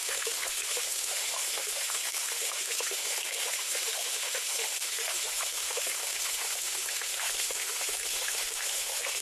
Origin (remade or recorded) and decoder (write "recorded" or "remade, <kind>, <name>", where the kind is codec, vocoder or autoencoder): remade, autoencoder, DAC-VAE